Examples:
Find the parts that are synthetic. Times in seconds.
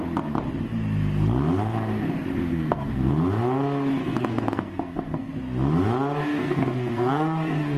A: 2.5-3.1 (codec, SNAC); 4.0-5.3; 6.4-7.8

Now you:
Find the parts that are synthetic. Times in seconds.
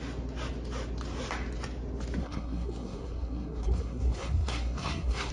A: 2.2-5.3 (codec, SNAC)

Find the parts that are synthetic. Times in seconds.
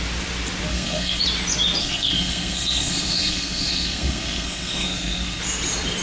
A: 0.7-1.2 (codec, SNAC); 1.8-5.4